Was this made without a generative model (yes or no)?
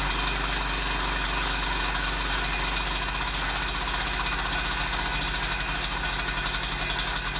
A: yes